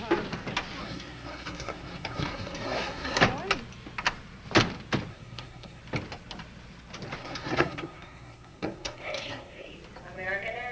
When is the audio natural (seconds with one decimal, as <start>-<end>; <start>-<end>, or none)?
0.0-0.8; 3.2-5.1; 5.8-7.2; 9.7-10.7